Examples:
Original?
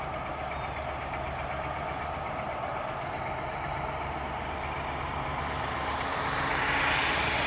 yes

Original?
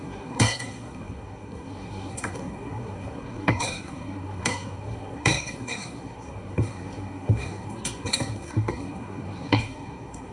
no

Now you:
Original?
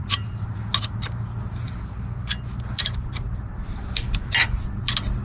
yes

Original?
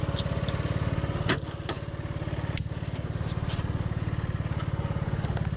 yes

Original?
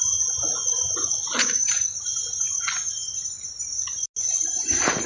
yes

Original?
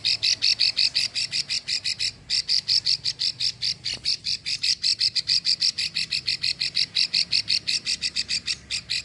yes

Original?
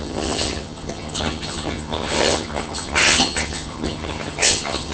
no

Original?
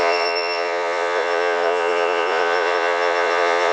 no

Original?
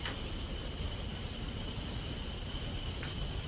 yes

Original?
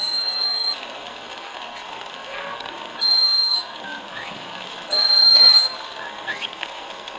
no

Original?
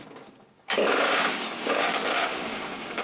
no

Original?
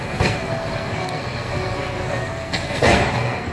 no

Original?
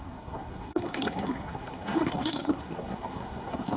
no